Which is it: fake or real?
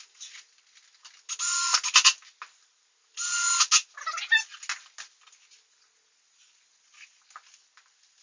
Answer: real